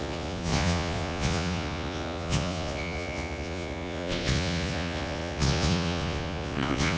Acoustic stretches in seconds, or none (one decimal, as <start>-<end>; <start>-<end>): none